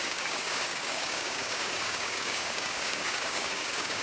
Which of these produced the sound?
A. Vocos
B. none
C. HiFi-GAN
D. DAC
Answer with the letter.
D